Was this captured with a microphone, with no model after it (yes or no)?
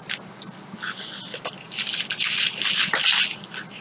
yes